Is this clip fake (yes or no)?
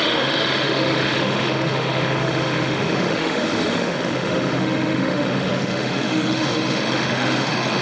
yes